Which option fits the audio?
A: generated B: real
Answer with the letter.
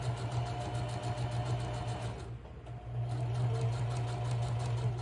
B